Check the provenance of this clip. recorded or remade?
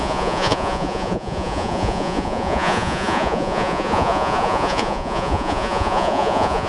remade